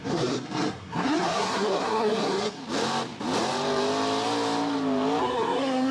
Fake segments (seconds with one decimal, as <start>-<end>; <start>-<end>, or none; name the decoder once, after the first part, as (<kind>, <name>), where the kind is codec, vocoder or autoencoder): 0.0-2.6 (codec, SNAC); 5.2-5.9